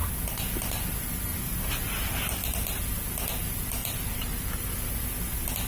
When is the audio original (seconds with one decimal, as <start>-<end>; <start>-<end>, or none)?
0.0-3.8; 4.7-5.7